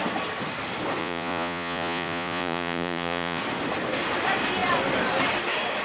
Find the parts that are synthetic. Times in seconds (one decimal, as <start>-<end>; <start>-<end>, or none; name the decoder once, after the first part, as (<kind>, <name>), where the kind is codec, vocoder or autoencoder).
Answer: 1.0-3.4 (vocoder, Vocos)